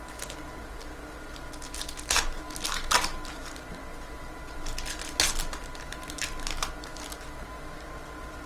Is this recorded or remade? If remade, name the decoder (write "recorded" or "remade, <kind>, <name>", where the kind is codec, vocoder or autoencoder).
recorded